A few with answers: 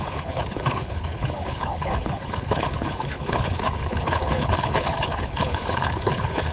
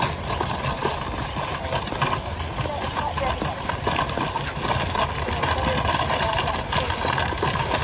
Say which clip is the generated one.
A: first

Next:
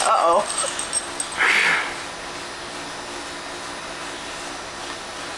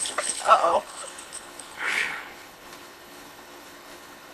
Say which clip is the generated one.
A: second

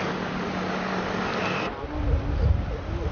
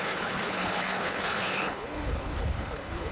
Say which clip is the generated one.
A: second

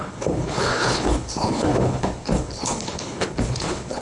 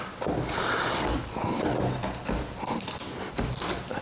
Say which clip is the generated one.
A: first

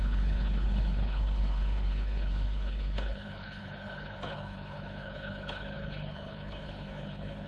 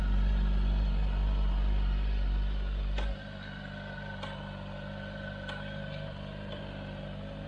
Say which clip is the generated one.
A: first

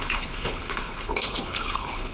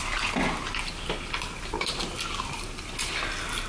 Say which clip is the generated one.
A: first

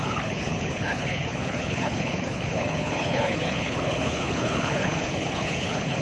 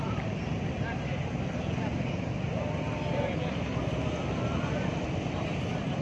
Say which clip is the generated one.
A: first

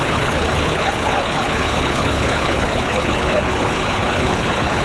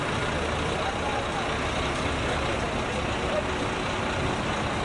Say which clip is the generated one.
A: first